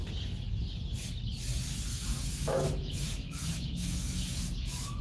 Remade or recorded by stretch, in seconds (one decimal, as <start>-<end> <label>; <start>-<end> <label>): 0.0-1.9 recorded; 1.9-5.0 remade